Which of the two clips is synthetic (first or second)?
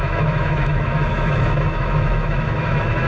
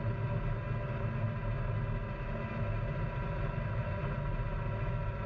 first